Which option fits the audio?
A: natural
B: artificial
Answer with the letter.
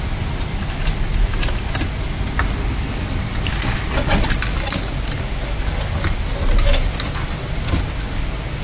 A